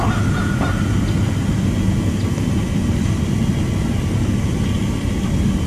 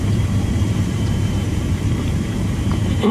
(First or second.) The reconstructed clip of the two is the second